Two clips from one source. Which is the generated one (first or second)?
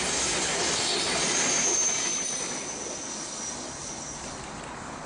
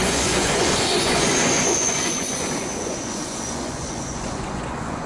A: second